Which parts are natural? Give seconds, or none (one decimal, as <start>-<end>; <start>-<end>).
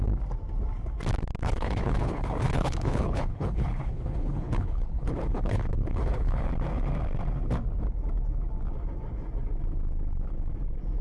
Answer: 0.0-1.4; 6.5-11.0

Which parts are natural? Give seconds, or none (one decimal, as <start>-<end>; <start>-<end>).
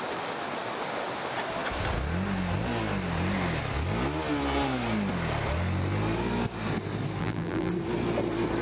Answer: 0.0-7.2; 7.7-8.6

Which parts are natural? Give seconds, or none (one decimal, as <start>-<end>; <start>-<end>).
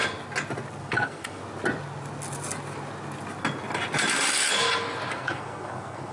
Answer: 0.0-0.8; 1.4-5.1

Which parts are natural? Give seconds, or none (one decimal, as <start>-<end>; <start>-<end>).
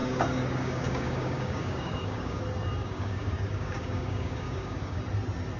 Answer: 2.4-2.8; 5.0-5.6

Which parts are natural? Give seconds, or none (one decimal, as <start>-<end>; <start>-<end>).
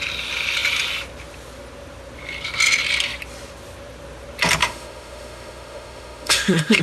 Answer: 0.0-4.6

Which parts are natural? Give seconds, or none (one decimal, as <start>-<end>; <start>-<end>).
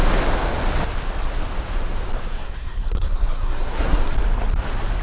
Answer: 0.0-2.3; 4.1-5.0